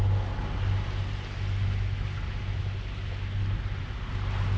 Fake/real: real